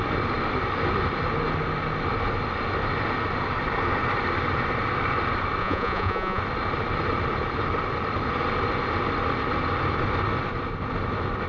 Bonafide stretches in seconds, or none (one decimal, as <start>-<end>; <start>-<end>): 0.0-5.6; 6.4-11.5